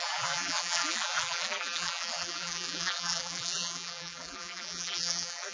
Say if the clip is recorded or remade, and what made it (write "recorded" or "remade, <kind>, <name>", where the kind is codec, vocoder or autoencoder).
remade, vocoder, BigVGAN v2